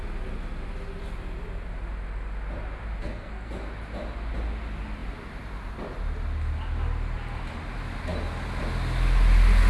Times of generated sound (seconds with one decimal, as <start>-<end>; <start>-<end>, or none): 3.0-3.5